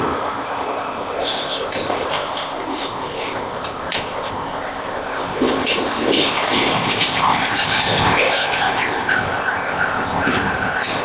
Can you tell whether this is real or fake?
fake